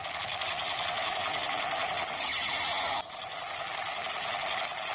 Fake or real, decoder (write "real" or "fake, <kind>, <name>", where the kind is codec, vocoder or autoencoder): real